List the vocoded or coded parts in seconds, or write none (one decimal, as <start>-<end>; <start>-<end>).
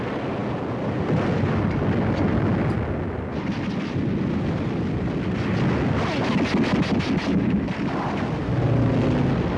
none